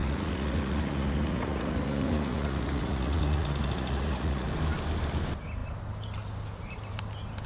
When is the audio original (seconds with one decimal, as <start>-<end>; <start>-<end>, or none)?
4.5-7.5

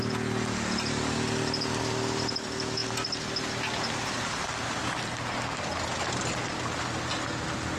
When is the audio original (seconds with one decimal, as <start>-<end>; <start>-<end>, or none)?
0.0-7.8

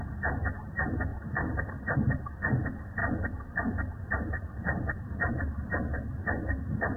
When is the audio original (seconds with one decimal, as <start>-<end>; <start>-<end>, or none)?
0.0-1.1; 1.7-3.0; 5.3-7.0

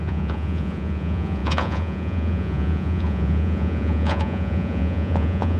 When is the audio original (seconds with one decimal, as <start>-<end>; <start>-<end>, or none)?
none